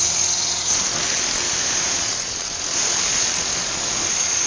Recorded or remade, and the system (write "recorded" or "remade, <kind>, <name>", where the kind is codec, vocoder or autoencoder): remade, vocoder, BigVGAN v2